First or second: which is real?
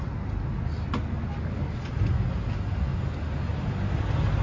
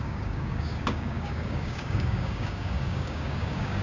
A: first